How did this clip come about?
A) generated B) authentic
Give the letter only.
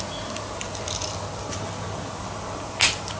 B